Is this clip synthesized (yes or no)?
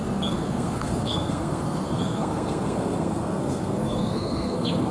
yes